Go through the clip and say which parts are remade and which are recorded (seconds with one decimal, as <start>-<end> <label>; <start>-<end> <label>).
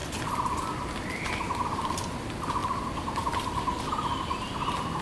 0.0-5.0 recorded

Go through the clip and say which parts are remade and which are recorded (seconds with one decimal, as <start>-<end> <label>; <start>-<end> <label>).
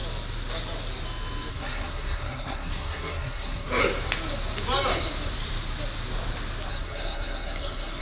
0.0-1.5 recorded; 1.5-3.8 remade; 3.8-6.7 recorded; 6.7-8.0 remade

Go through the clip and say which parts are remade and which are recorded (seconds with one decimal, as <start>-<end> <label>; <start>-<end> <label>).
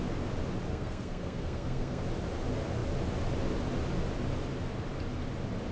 0.0-0.7 recorded; 0.7-2.0 remade; 2.0-5.7 recorded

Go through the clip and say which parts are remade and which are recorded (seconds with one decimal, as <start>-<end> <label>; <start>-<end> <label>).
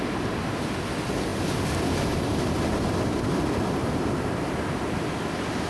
0.0-3.8 recorded; 3.8-5.2 remade; 5.2-5.7 recorded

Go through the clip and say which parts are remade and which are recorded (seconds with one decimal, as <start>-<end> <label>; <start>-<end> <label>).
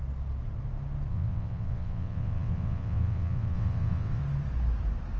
0.0-1.1 recorded; 1.1-4.2 remade; 4.2-5.2 recorded